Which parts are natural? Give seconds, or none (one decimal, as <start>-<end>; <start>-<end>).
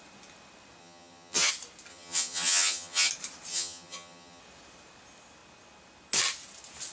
0.0-0.8; 1.5-1.9; 3.1-3.5; 4.4-6.9